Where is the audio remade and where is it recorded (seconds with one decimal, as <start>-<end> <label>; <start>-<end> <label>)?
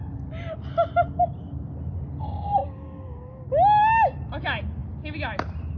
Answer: 0.0-2.6 recorded; 2.6-3.5 remade; 3.5-5.8 recorded